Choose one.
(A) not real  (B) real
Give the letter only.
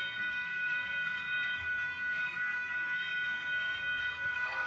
A